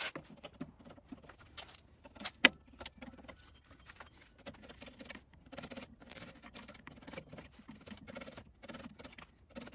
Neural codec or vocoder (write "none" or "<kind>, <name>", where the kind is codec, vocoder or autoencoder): none